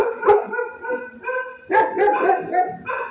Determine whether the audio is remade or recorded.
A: remade